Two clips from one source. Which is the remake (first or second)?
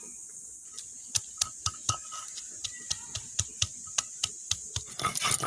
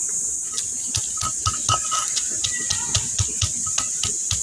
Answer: first